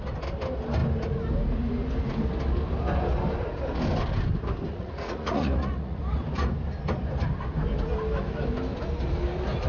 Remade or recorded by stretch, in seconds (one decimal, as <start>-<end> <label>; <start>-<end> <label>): 0.0-4.7 recorded; 4.7-6.0 remade; 6.0-9.7 recorded